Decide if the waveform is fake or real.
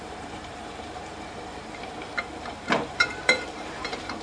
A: fake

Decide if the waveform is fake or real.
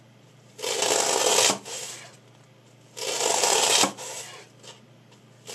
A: real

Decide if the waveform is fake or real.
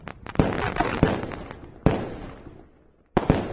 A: real